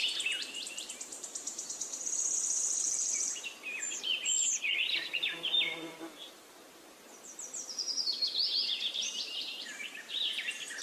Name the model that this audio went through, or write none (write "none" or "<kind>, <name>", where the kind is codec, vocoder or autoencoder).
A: vocoder, BigVGAN v2